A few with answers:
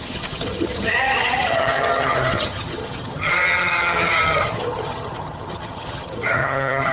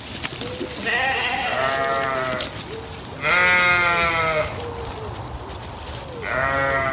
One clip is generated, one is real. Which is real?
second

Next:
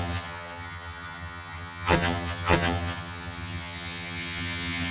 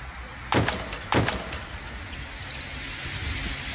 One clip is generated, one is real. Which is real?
second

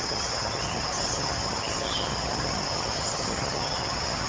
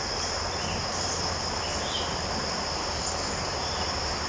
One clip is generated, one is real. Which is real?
second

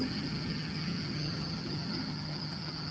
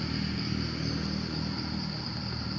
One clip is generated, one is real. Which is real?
second